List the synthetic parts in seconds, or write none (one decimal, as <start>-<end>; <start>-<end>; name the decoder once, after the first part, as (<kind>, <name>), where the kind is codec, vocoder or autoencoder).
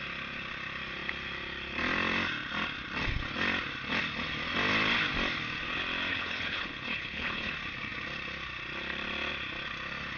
6.1-7.5 (codec, HILCodec)